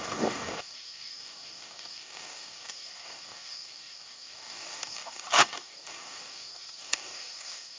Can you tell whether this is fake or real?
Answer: fake